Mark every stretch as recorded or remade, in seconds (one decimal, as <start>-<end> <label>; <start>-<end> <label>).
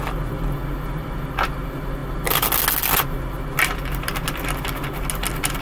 0.0-5.6 recorded